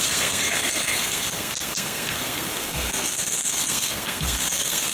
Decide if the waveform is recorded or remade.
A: remade